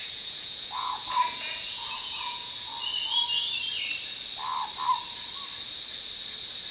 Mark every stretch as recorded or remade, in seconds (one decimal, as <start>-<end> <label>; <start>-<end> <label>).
0.0-2.5 remade; 2.5-6.7 recorded